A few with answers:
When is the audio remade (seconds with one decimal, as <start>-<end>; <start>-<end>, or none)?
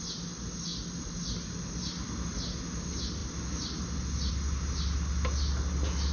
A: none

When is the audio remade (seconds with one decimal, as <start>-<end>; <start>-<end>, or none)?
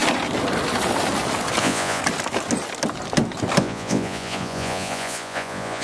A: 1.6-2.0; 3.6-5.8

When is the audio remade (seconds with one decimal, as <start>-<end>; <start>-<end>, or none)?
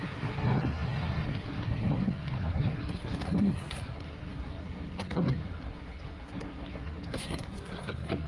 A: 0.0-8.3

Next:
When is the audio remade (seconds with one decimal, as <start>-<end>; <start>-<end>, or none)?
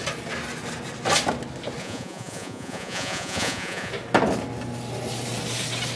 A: 1.8-3.9